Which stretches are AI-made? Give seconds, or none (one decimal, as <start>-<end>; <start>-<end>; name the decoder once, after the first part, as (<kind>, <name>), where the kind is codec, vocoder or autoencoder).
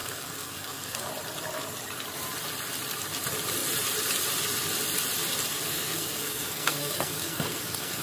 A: 0.0-1.1 (codec, SNAC); 5.5-8.0